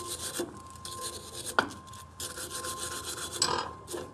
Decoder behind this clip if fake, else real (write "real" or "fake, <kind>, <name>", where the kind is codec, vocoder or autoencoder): real